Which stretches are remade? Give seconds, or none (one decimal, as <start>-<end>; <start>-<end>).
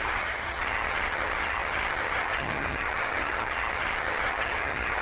0.0-5.0